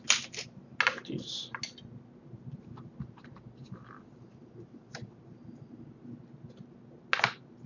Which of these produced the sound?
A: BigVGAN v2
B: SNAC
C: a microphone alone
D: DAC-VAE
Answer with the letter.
C